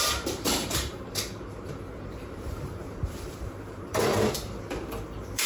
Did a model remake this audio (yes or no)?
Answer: yes